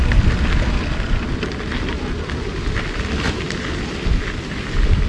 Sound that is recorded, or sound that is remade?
recorded